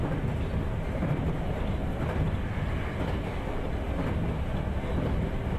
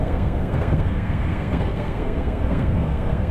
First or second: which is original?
first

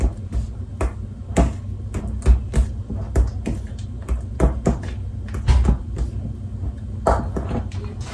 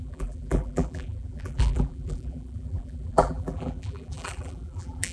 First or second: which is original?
first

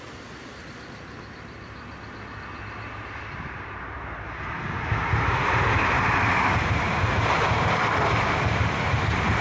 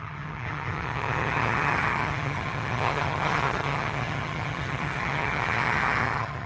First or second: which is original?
first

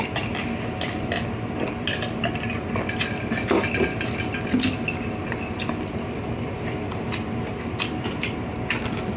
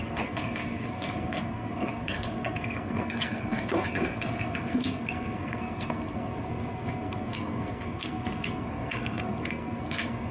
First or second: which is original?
first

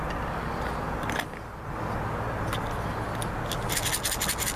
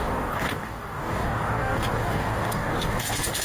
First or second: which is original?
first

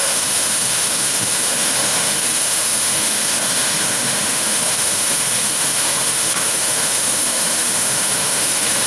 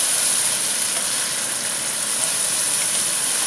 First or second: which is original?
second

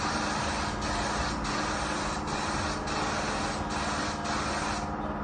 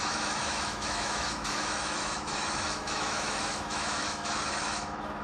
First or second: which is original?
first